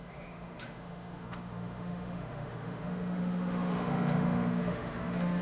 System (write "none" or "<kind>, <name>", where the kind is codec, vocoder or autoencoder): autoencoder, DAC-VAE